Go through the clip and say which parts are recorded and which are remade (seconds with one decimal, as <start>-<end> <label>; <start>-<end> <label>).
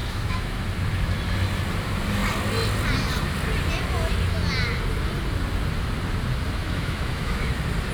0.0-0.6 remade; 0.6-6.6 recorded; 6.6-7.5 remade; 7.5-7.9 recorded